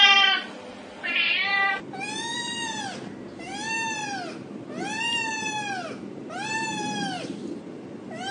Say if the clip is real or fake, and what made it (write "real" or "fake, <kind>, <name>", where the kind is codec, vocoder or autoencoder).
fake, vocoder, BigVGAN v2